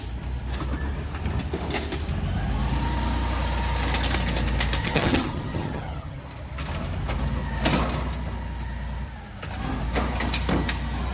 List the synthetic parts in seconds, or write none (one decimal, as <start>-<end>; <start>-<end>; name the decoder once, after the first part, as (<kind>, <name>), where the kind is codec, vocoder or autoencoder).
4.8-6.2 (vocoder, HiFi-GAN)